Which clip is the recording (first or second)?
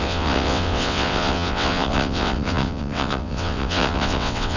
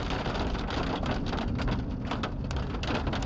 second